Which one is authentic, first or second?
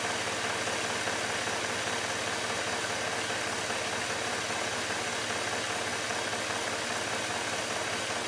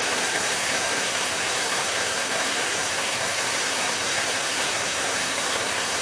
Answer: first